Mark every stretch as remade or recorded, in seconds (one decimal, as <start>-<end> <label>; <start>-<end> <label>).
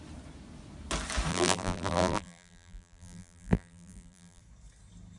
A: 0.0-1.3 recorded; 1.3-4.4 remade; 4.4-5.2 recorded